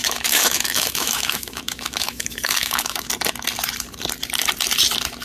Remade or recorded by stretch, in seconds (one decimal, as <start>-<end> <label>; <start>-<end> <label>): 0.0-3.1 remade; 3.1-5.2 recorded